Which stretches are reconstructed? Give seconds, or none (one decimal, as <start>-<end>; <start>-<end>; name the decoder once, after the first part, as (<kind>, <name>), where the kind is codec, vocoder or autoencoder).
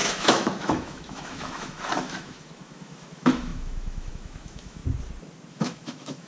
0.0-4.8 (autoencoder, DAC-VAE); 5.5-6.3